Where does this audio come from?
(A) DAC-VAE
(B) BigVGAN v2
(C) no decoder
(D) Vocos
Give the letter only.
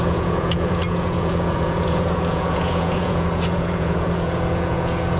D